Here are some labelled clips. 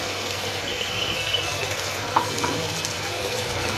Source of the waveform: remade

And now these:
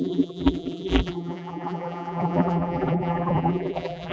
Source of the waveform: remade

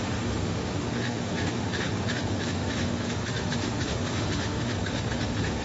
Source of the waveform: remade